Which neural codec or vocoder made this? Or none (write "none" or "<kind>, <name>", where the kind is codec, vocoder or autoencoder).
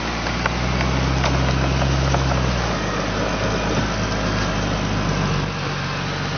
none